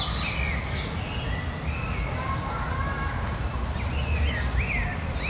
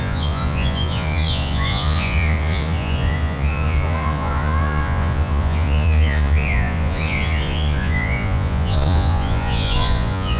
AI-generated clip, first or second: second